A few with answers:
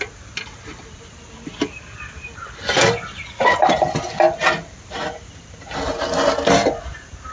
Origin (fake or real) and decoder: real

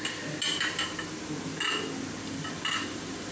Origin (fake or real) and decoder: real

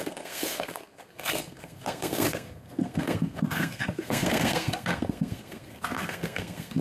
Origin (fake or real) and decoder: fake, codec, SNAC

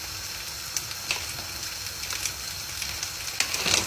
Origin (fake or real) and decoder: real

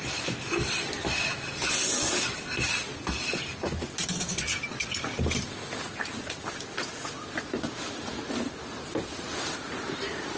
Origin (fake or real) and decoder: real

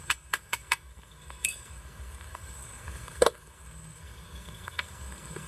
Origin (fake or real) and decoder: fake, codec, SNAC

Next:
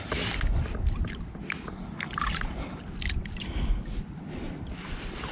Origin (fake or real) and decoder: real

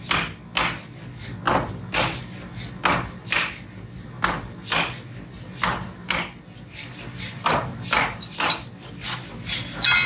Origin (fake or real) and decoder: real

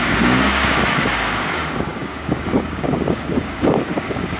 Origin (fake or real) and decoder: fake, codec, DAC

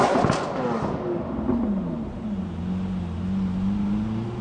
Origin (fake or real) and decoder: real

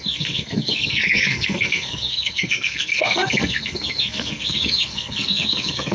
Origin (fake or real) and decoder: fake, codec, SNAC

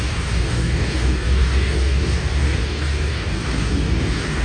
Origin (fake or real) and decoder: fake, codec, DAC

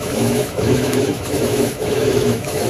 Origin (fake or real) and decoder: fake, autoencoder, DAC-VAE